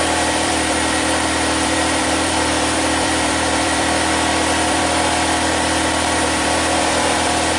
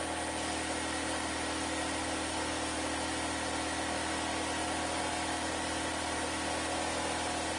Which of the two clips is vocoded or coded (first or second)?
first